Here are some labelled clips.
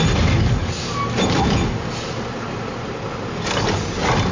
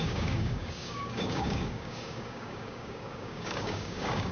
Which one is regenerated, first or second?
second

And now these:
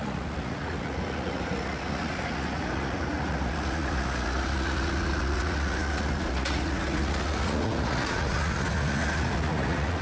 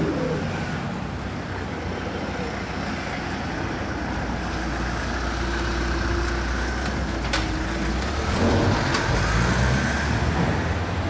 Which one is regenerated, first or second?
first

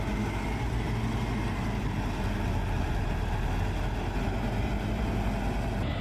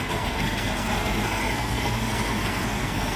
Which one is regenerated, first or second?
second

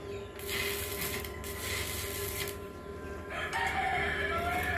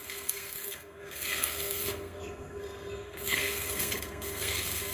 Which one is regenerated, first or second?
second